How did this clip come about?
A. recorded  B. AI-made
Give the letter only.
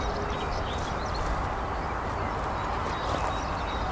A